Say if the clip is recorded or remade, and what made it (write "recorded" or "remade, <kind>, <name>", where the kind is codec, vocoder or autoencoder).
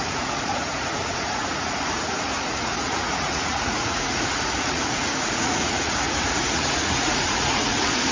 remade, vocoder, Vocos